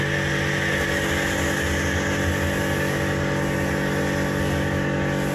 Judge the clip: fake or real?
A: real